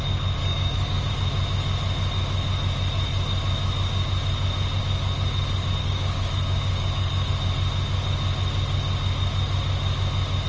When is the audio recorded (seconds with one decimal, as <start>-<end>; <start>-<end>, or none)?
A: 0.0-0.4; 1.1-5.8; 7.3-10.5